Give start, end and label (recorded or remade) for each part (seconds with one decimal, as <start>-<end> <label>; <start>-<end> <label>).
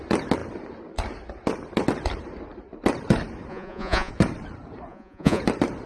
0.0-3.5 recorded; 3.5-4.1 remade; 4.1-4.9 recorded; 4.9-5.4 remade; 5.4-5.9 recorded